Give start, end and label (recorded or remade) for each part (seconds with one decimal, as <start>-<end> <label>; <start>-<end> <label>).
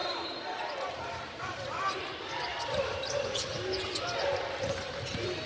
0.0-2.0 remade; 2.0-2.5 recorded; 2.5-3.2 remade; 3.2-5.5 recorded